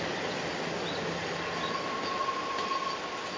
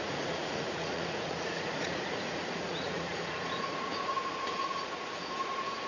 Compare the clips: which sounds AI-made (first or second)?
second